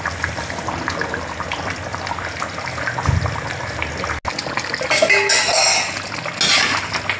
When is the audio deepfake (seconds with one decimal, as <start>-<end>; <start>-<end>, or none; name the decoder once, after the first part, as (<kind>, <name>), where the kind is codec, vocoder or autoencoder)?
none